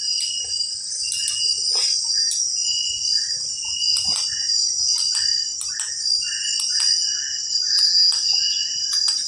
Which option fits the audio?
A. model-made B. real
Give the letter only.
B